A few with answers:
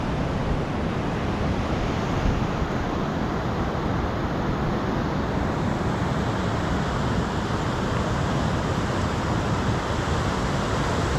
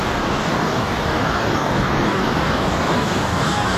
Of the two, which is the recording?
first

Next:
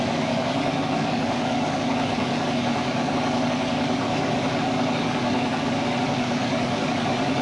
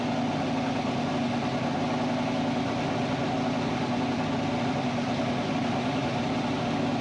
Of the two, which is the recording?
second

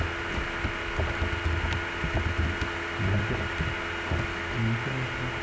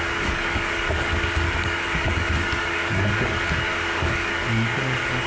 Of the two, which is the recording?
first